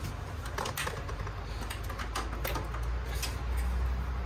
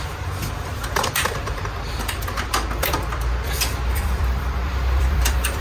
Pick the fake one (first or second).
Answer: second